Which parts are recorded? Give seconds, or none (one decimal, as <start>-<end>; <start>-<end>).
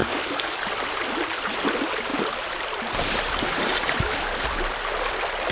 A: 0.6-5.5